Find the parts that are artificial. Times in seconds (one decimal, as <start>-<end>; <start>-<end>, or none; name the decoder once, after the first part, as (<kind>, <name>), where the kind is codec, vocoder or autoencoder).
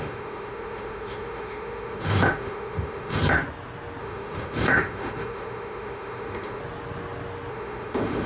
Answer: 0.0-3.2 (autoencoder, DAC-VAE); 4.0-6.6; 7.5-8.3